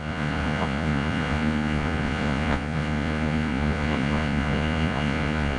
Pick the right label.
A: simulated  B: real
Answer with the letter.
A